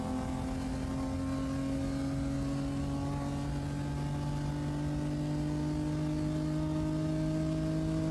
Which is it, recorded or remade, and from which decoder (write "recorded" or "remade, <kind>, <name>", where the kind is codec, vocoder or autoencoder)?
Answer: recorded